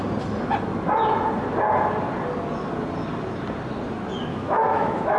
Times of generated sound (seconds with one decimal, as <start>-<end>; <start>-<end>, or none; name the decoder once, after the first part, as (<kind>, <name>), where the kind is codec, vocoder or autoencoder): 4.3-5.2 (autoencoder, DAC-VAE)